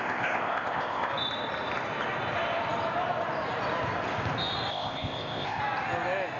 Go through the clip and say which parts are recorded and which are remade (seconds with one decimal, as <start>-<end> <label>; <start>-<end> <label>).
0.0-1.1 remade; 1.1-4.7 recorded; 4.7-5.6 remade; 5.6-6.4 recorded